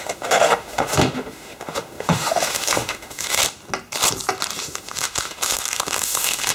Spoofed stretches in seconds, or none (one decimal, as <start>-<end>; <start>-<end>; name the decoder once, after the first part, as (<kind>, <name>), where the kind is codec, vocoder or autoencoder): 0.0-3.4 (autoencoder, DAC-VAE); 4.6-6.5